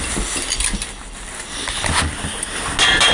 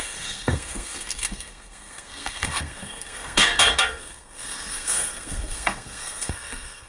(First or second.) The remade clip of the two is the second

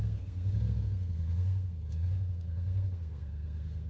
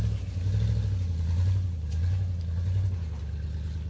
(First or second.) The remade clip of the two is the first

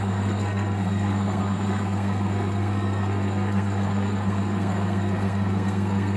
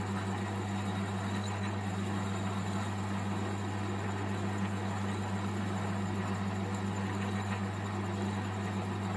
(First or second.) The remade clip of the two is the first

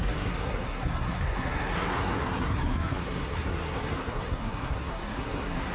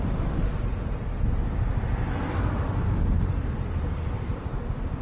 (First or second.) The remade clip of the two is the first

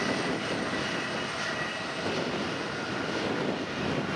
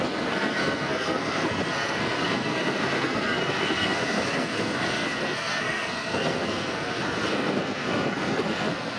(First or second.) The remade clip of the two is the second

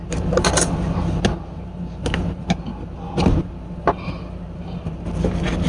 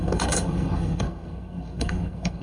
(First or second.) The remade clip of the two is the second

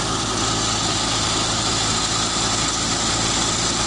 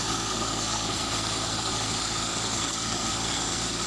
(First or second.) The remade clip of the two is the second